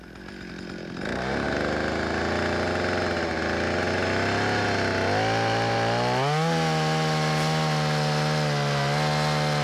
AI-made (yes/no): no